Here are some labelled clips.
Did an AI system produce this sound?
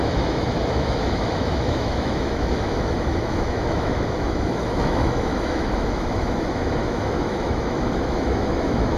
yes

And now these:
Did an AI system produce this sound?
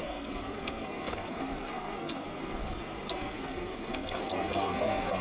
yes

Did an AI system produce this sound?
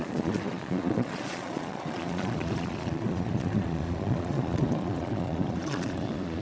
yes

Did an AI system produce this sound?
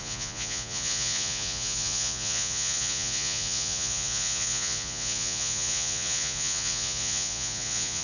yes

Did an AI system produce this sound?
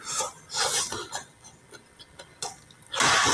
no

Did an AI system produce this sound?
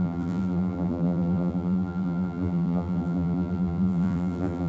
yes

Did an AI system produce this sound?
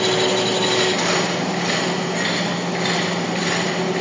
no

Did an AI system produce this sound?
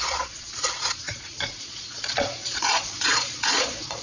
yes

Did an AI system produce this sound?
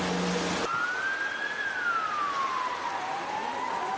no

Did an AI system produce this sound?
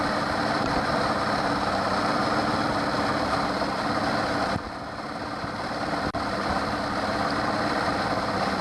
no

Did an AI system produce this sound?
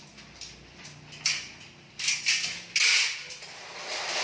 no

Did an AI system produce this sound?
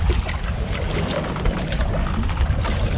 no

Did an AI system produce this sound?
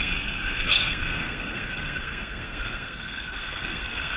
yes